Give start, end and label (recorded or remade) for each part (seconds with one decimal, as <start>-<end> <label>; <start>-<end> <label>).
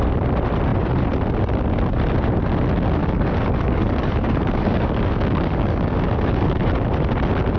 0.0-3.0 recorded; 3.0-6.7 remade; 6.7-7.6 recorded